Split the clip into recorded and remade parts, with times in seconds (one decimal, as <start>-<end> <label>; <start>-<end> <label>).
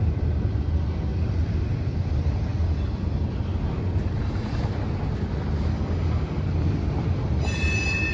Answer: 0.0-8.1 recorded